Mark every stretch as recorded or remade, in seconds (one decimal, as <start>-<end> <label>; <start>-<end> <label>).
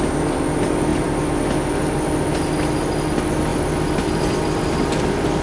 0.0-0.9 recorded; 0.9-1.4 remade; 1.4-3.5 recorded; 3.5-5.0 remade; 5.0-5.4 recorded